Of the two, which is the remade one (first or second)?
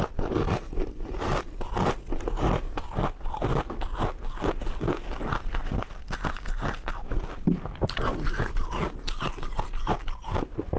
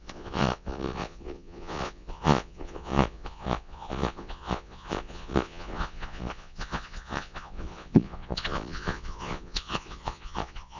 second